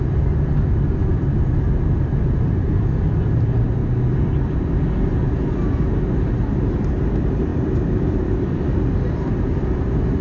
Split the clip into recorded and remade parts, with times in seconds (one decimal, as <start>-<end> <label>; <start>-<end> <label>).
0.0-3.8 remade; 3.8-6.0 recorded; 6.0-10.2 remade